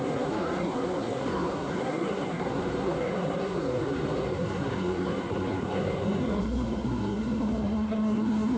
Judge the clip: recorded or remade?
remade